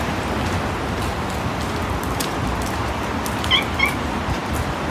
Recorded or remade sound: recorded